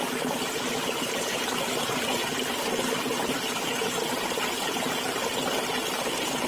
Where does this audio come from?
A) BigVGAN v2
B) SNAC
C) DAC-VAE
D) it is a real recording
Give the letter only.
D